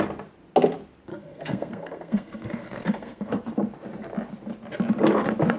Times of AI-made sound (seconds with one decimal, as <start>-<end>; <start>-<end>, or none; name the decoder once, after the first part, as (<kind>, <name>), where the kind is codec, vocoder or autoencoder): 1.1-3.3 (codec, SNAC)